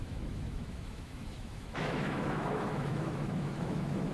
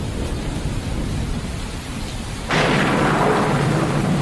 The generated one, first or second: first